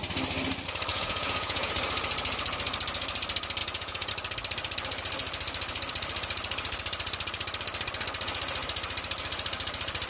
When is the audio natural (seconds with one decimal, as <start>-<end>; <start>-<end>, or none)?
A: 0.0-0.9; 1.7-3.6; 4.1-10.1